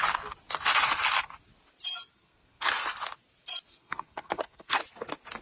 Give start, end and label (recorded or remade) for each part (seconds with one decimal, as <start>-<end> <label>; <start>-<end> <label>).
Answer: 0.0-2.1 recorded; 2.1-2.7 remade; 2.7-3.7 recorded; 3.7-4.8 remade; 4.8-5.4 recorded